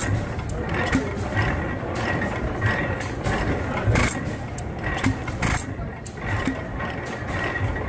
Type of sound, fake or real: real